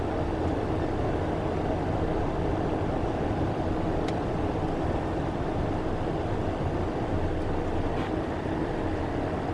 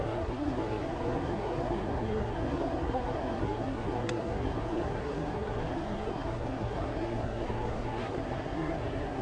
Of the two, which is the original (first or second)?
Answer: first